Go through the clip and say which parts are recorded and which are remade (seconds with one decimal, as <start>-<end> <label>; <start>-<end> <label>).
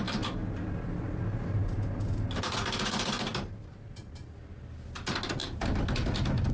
0.0-0.4 recorded; 0.4-1.1 remade; 1.1-5.4 recorded; 5.4-6.5 remade